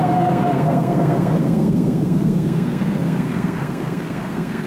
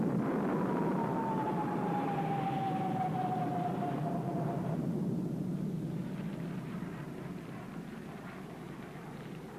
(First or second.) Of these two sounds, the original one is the second